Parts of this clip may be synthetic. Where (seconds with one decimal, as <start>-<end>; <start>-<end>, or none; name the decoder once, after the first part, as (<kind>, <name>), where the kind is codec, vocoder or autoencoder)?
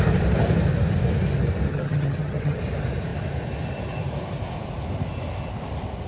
1.7-2.6 (vocoder, HiFi-GAN)